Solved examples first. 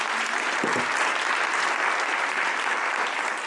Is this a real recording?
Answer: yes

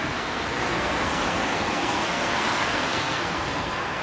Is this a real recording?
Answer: no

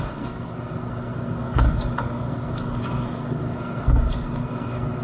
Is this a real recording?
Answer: no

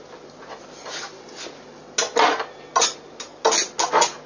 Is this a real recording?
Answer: yes